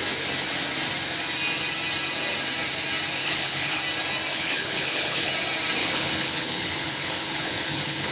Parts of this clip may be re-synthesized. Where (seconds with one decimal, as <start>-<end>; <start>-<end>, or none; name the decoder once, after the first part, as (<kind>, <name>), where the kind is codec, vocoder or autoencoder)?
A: 3.2-3.8 (codec, HILCodec); 4.3-5.3; 5.8-8.1